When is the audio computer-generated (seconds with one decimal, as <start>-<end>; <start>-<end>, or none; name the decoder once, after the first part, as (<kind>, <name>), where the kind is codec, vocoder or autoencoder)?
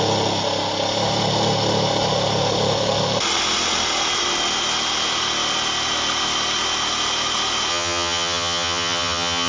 7.7-9.5 (vocoder, HiFi-GAN)